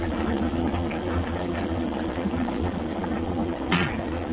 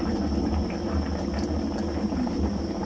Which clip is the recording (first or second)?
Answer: second